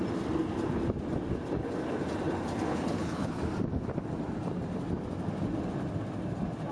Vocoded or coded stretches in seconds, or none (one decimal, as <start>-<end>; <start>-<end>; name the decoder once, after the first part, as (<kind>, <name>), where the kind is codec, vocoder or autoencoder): 2.7-3.4 (codec, HILCodec)